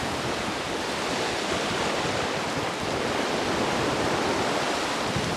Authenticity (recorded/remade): recorded